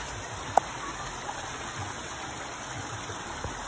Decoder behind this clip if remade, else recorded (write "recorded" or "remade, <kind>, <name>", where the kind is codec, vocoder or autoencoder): recorded